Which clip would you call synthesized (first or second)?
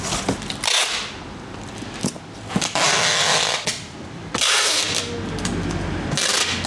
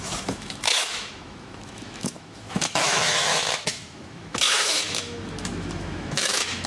second